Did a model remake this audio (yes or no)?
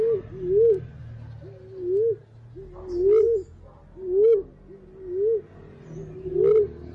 no